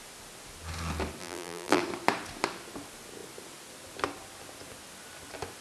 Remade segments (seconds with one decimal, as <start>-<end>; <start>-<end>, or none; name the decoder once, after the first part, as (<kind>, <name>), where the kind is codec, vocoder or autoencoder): 1.2-1.8 (vocoder, BigVGAN v2)